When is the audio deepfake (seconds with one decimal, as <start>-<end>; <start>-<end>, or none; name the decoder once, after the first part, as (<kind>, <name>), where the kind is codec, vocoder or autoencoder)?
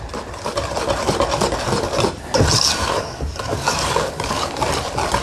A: 2.8-4.7 (codec, DAC)